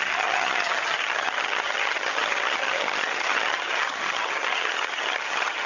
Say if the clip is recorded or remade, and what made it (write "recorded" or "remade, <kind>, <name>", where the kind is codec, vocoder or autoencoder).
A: remade, vocoder, HiFi-GAN